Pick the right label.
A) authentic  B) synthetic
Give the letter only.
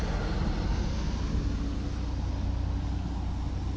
A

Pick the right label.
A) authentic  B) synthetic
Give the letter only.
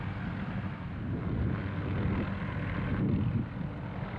A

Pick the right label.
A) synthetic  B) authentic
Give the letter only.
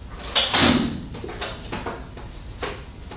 B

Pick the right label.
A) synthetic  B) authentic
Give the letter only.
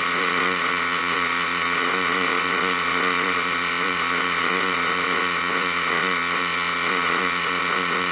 A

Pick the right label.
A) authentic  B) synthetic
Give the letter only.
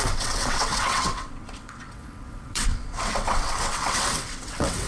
B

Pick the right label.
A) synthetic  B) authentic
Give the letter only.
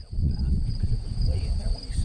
A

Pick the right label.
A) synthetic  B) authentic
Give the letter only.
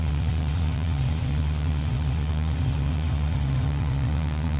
A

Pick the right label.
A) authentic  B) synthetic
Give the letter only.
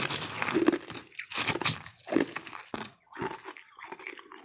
A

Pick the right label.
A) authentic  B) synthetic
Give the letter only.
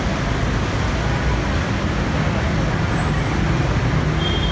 A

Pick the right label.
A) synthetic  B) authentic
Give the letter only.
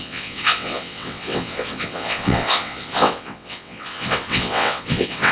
A